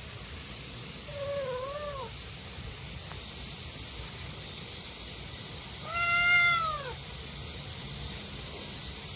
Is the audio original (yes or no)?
yes